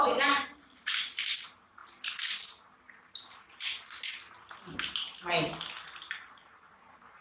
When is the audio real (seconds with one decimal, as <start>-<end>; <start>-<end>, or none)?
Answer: 1.8-6.1